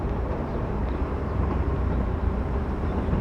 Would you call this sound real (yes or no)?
no